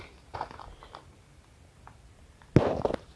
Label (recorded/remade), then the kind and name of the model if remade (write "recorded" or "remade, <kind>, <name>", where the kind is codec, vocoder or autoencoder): recorded